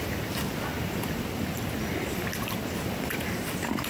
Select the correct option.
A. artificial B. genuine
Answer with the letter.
B